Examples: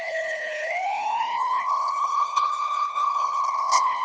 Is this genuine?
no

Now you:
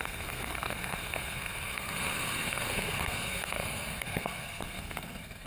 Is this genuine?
no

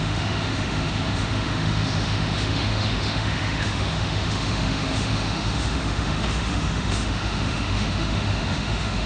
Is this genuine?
no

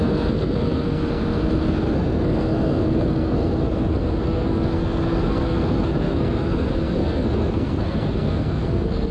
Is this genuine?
no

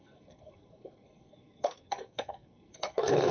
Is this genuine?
no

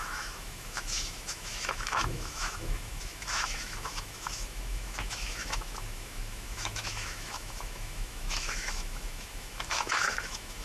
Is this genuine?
no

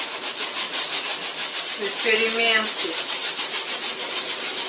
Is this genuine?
yes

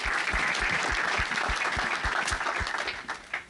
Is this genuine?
yes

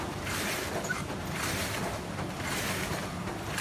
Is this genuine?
no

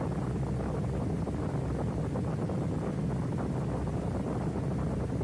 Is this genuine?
yes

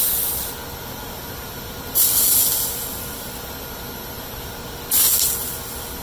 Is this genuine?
yes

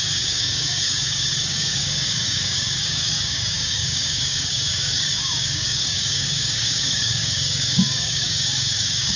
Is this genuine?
no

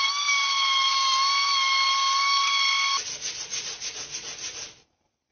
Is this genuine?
yes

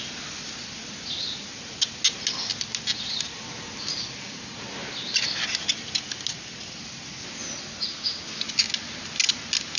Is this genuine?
yes